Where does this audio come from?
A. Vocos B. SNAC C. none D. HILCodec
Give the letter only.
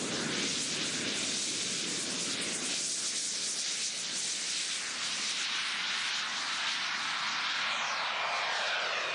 C